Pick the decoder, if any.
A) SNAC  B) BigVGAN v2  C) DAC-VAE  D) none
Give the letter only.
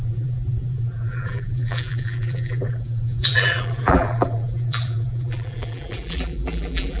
B